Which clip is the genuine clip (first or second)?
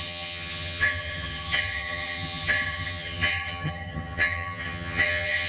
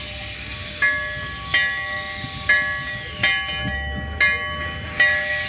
second